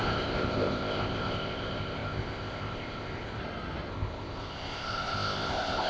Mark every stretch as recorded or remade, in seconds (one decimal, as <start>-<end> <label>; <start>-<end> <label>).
0.0-3.4 remade; 3.4-3.9 recorded; 3.9-5.9 remade